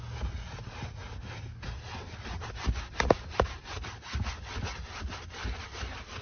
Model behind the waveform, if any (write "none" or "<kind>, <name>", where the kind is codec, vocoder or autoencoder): none